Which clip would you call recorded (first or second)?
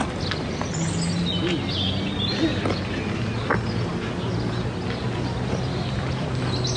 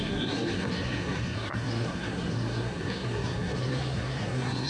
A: first